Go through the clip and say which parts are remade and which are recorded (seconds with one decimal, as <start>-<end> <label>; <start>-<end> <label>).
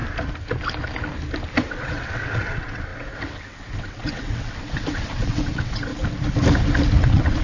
0.0-1.6 recorded; 1.6-5.9 remade; 5.9-7.0 recorded; 7.0-7.4 remade